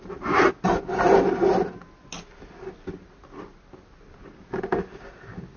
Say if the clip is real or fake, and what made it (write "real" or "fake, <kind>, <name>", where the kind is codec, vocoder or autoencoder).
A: real